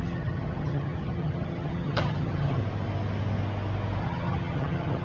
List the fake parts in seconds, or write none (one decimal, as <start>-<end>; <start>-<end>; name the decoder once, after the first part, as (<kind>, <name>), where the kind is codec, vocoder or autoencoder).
0.0-2.6 (vocoder, HiFi-GAN); 4.0-5.0